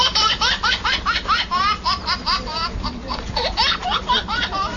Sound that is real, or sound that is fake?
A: fake